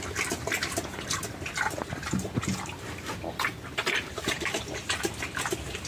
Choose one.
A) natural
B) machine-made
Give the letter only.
A